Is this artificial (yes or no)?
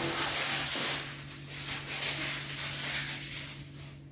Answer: no